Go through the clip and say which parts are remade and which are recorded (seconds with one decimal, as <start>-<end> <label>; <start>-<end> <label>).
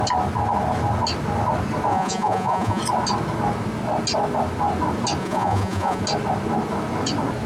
0.0-1.9 recorded; 1.9-2.8 remade; 2.8-5.2 recorded; 5.2-6.0 remade; 6.0-7.5 recorded